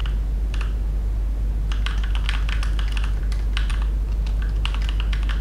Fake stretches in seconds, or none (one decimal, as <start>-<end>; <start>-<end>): none